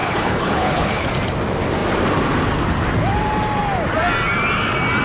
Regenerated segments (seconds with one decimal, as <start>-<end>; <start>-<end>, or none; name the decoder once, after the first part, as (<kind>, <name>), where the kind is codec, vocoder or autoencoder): 0.0-1.1 (codec, HILCodec)